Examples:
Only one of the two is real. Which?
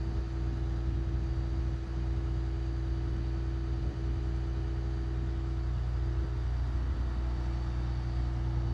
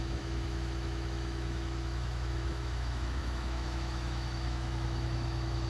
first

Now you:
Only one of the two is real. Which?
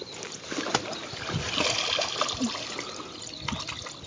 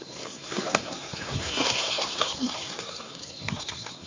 first